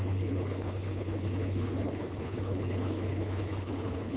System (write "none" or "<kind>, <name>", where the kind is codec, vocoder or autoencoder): codec, HILCodec